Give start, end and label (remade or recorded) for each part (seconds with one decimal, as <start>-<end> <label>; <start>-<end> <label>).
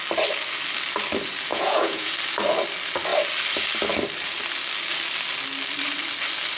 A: 0.0-1.5 recorded; 1.5-2.1 remade; 2.1-6.6 recorded